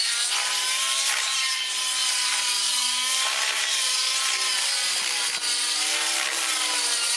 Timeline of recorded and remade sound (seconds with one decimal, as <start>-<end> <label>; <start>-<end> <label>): 0.0-7.2 recorded